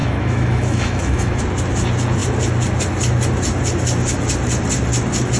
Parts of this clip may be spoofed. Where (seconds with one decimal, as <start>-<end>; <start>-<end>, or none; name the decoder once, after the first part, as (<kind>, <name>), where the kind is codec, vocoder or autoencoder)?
0.0-1.4 (autoencoder, DAC-VAE)